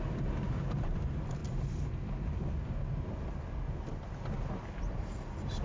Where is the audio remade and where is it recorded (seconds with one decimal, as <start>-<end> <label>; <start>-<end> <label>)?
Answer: 0.0-1.4 remade; 1.4-4.8 recorded; 4.8-5.6 remade

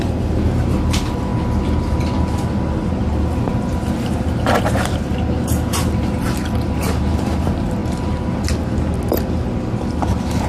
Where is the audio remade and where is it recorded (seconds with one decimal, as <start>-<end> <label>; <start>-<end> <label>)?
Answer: 0.0-1.3 remade; 1.3-3.0 recorded; 3.0-7.8 remade; 7.8-10.1 recorded; 10.1-10.5 remade

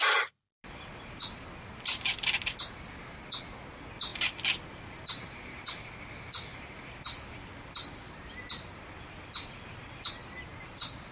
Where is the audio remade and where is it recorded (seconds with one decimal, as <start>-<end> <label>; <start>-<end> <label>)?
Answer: 0.0-1.9 recorded; 1.9-2.6 remade; 2.6-4.1 recorded; 4.1-5.9 remade; 5.9-6.5 recorded; 6.5-8.1 remade; 8.1-11.1 recorded

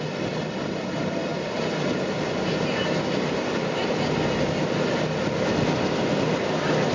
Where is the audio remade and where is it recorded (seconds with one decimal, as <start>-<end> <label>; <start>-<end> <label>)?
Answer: 0.0-1.3 recorded; 1.3-2.8 remade; 2.8-6.9 recorded

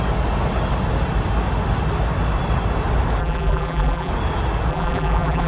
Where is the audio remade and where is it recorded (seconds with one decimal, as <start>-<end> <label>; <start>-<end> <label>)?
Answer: 0.0-3.2 recorded; 3.2-4.1 remade; 4.1-4.7 recorded; 4.7-5.5 remade